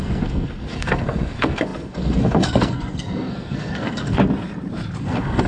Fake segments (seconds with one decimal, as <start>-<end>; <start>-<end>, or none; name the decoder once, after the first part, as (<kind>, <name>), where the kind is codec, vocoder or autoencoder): 0.0-4.2 (codec, SNAC); 5.0-5.5